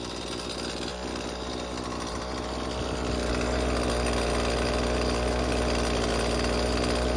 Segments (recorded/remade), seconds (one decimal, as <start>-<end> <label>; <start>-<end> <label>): 0.0-7.2 recorded